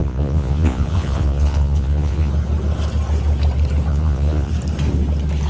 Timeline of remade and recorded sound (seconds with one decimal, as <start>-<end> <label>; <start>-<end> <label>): 0.0-2.3 remade; 2.3-3.9 recorded; 3.9-4.5 remade; 4.5-5.5 recorded